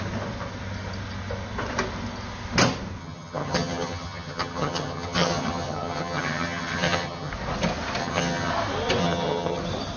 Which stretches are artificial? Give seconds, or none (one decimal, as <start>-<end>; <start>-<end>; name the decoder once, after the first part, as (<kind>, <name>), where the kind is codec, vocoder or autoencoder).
3.0-7.3 (vocoder, HiFi-GAN); 8.0-8.5; 9.0-9.6